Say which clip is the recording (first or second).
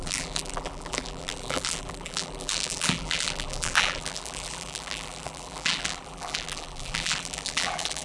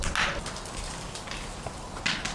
second